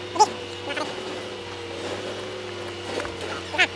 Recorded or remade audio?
recorded